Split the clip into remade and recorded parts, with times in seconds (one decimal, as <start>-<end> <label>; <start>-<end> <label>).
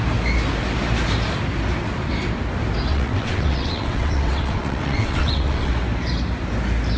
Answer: 0.0-2.9 recorded; 2.9-5.7 remade; 5.7-7.0 recorded